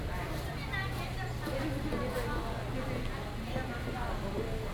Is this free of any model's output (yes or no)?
yes